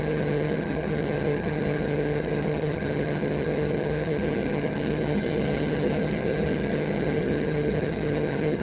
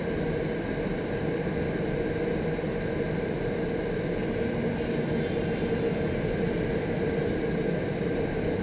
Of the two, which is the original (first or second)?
second